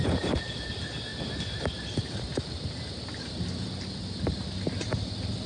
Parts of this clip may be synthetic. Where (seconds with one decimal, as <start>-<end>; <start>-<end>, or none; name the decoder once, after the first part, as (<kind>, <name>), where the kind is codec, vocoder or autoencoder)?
none